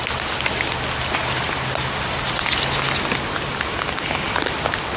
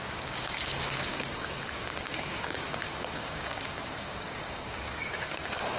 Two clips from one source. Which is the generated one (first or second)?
second